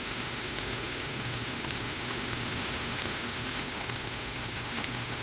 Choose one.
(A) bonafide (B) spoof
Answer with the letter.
B